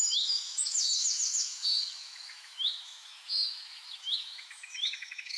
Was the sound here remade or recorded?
remade